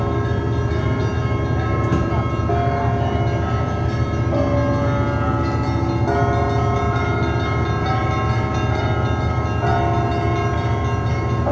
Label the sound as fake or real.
real